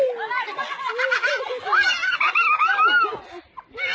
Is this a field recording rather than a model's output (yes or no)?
yes